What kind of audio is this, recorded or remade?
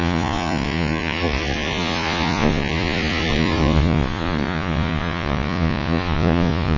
remade